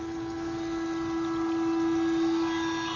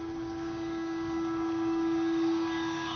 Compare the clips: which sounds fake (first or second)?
second